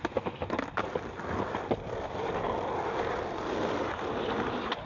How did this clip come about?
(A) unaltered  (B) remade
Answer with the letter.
A